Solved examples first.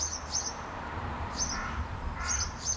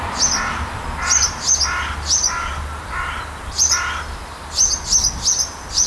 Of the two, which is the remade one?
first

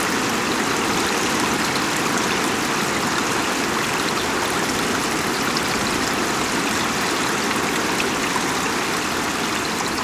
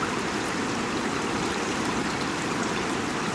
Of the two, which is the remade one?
second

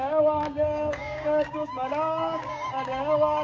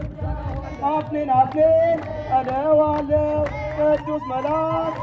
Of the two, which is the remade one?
first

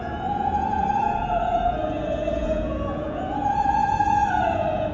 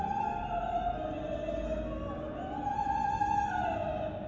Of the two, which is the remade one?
first